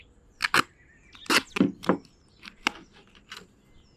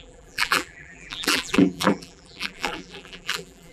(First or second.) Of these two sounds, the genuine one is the first